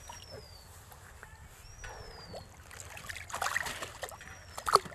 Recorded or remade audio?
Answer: recorded